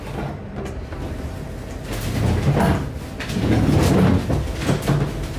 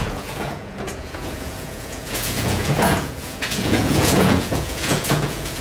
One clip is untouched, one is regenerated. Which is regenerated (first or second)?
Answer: second